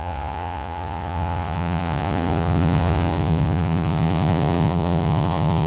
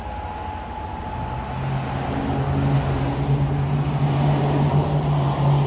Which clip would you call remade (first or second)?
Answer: first